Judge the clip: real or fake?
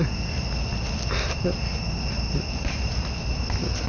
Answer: real